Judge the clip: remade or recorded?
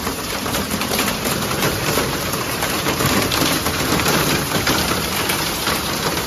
remade